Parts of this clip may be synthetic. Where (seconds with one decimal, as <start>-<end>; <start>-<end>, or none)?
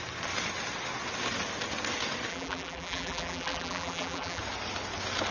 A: 2.3-4.4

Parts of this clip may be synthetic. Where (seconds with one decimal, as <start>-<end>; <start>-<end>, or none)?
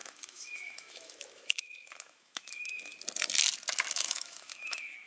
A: 0.0-2.9; 3.9-5.1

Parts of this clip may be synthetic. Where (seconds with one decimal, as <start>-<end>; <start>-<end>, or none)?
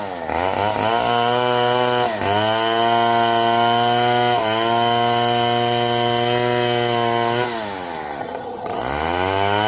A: 8.2-8.8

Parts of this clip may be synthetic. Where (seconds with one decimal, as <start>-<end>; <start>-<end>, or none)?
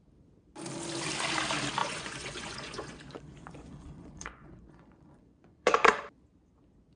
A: 1.8-6.0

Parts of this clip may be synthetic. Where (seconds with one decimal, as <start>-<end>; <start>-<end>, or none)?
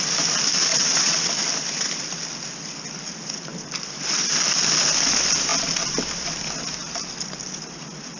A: 0.7-1.3